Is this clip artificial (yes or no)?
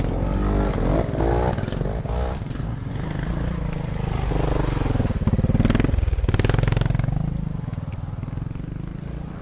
no